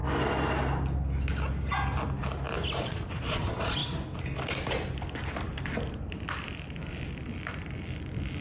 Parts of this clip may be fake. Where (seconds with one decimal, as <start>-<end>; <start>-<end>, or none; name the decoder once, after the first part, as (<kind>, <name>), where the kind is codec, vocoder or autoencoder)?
2.8-3.8 (vocoder, Vocos)